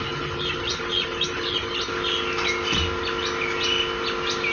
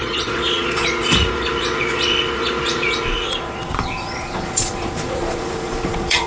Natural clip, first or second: first